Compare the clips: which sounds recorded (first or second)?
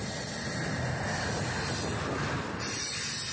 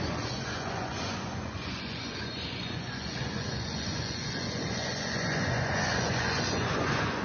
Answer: first